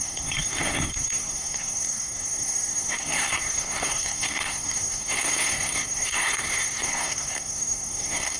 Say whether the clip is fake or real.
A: fake